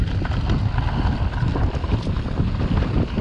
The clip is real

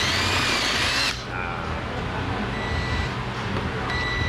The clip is real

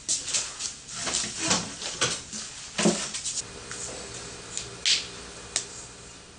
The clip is real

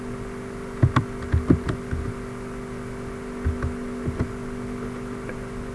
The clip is real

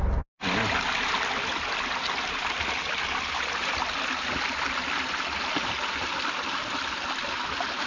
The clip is real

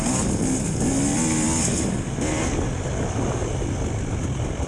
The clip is real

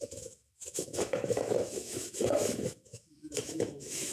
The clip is fake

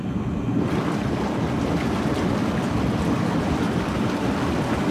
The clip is real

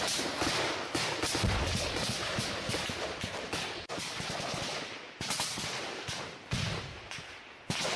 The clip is real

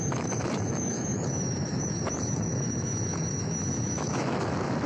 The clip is fake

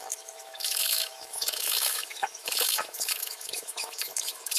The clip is fake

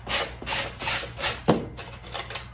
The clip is real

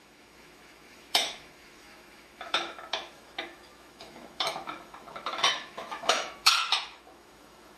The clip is fake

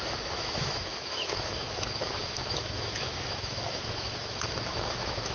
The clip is fake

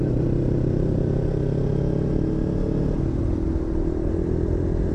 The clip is real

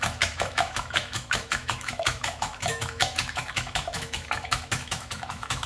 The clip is fake